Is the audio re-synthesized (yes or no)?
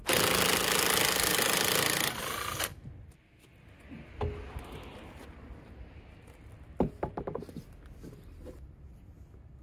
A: no